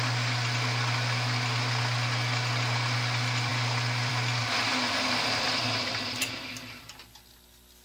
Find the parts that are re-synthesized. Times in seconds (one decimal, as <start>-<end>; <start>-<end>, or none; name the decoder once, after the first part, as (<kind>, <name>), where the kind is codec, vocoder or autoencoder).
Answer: none